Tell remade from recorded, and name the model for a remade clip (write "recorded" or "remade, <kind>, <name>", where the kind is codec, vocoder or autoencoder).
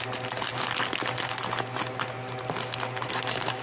recorded